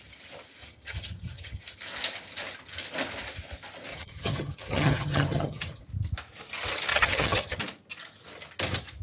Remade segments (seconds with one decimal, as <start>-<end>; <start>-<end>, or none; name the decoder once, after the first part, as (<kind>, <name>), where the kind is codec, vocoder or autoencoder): 0.6-1.6 (vocoder, HiFi-GAN); 3.9-5.8; 6.9-7.6